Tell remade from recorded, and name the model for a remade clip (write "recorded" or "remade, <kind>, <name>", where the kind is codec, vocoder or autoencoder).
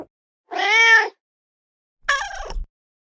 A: recorded